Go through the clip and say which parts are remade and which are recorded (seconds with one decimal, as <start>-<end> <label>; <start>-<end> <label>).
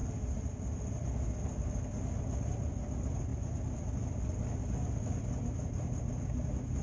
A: 0.0-6.8 recorded